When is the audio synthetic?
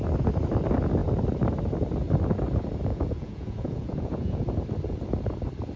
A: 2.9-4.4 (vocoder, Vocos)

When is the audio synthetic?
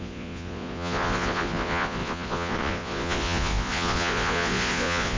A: 0.0-5.2 (vocoder, Vocos)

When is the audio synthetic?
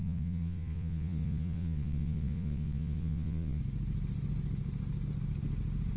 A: 0.0-3.6 (vocoder, Vocos)